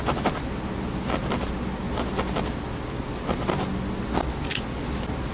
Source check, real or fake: real